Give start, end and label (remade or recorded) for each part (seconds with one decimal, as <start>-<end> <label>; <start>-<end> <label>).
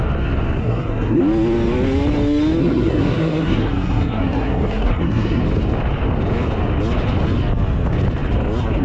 0.0-0.6 recorded; 0.6-1.2 remade; 1.2-2.6 recorded; 2.6-5.4 remade; 5.4-8.8 recorded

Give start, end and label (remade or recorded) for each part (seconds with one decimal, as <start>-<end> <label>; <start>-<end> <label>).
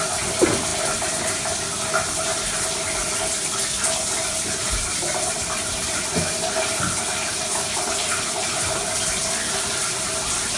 0.0-10.6 recorded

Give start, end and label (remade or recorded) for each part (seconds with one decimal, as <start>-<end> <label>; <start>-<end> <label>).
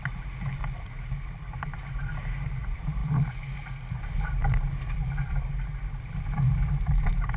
0.0-0.6 remade; 0.6-1.5 recorded; 1.5-3.0 remade; 3.0-4.0 recorded; 4.0-4.4 remade; 4.4-5.8 recorded; 5.8-7.4 remade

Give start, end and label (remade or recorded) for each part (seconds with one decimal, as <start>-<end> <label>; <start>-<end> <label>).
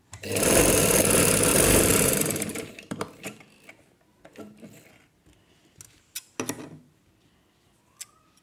0.0-1.5 recorded; 1.5-2.1 remade; 2.1-2.5 recorded; 2.5-3.4 remade; 3.4-8.4 recorded